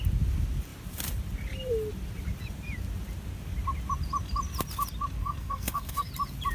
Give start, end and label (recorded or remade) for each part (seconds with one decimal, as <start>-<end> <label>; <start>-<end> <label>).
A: 0.0-5.2 recorded; 5.2-6.1 remade; 6.1-6.5 recorded